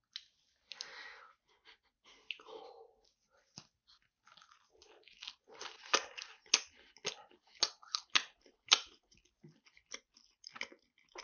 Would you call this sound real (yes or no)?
yes